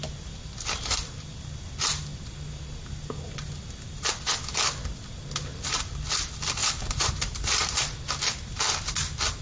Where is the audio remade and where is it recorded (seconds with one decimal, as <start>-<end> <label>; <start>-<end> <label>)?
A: 0.0-6.6 recorded; 6.6-8.2 remade; 8.2-9.4 recorded